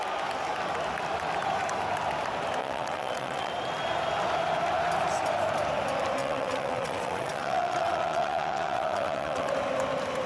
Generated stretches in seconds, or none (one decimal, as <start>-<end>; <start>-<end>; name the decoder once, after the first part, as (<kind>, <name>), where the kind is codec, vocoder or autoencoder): 2.6-3.5 (vocoder, WaveNeXt); 6.2-9.5